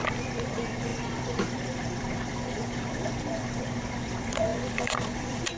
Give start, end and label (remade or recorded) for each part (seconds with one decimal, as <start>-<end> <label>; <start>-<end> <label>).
0.0-5.6 remade